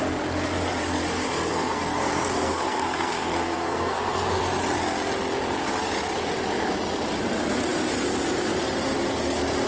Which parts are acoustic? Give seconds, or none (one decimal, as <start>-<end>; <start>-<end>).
0.0-1.5; 4.4-9.7